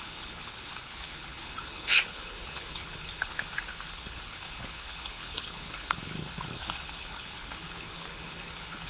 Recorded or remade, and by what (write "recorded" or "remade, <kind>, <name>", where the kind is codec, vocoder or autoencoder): remade, codec, HILCodec